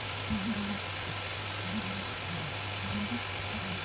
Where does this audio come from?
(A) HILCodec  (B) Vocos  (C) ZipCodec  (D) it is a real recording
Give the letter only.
D